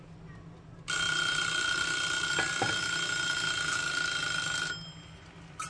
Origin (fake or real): real